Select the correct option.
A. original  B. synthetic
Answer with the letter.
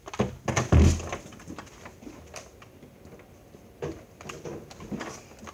A